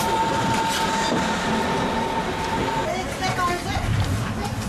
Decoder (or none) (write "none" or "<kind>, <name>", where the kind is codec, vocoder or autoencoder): none